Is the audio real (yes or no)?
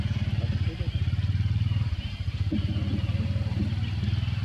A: yes